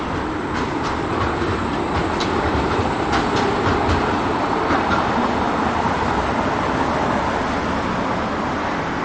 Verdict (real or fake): fake